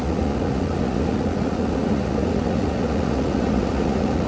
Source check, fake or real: fake